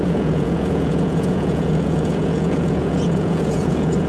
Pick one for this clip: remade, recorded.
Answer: remade